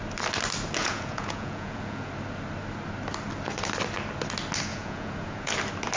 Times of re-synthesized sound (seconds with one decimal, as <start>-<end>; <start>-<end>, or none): 0.8-2.1; 4.7-5.5